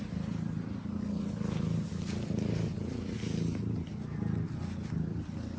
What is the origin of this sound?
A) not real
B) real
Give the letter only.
B